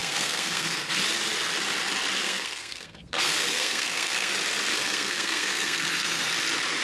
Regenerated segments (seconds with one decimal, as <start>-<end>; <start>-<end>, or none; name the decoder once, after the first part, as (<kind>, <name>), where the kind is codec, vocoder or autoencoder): 0.0-1.0 (codec, SNAC); 2.2-4.3; 4.7-6.3